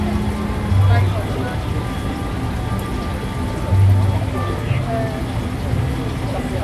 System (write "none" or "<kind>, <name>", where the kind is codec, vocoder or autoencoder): none